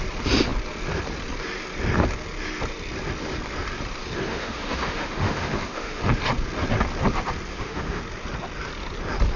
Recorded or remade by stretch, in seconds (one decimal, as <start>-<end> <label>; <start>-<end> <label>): 0.0-4.3 recorded; 4.3-6.0 remade; 6.0-7.5 recorded; 7.5-8.0 remade; 8.0-9.4 recorded